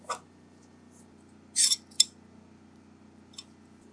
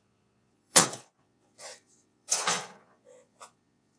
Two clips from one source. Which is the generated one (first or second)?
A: second